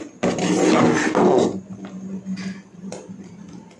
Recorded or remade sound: recorded